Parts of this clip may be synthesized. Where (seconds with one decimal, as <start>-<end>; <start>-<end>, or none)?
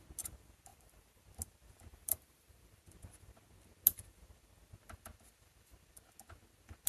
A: 0.7-1.2; 1.9-2.8